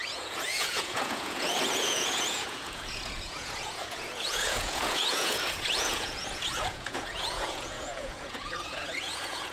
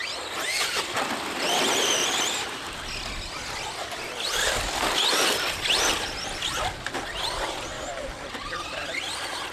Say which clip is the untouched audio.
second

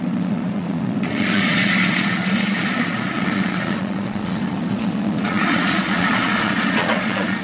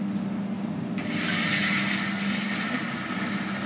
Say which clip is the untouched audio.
second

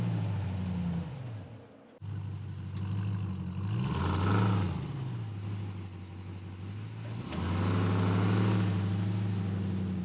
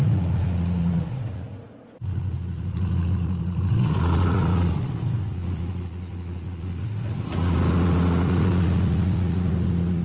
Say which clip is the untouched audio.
first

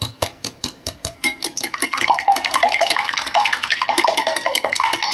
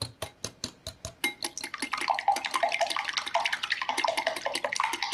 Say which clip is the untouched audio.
second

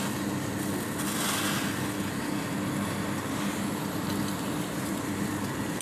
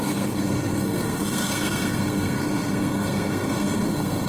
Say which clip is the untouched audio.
first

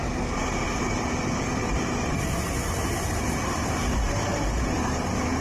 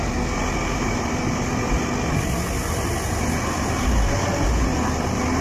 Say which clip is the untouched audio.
second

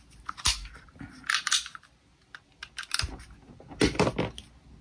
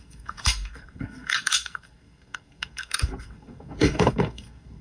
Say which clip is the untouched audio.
first